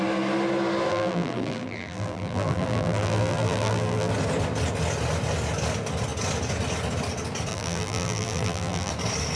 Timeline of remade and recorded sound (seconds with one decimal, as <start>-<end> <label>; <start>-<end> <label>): 0.0-0.9 recorded; 0.9-4.1 remade; 4.1-7.5 recorded; 7.5-8.9 remade; 8.9-9.3 recorded